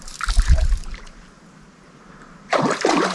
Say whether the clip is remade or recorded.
remade